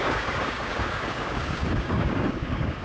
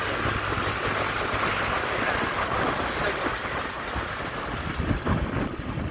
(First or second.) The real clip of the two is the second